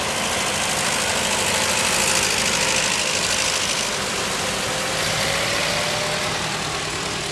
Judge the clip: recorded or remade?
recorded